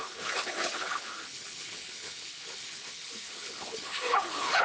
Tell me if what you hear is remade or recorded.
remade